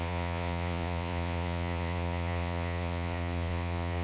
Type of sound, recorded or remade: remade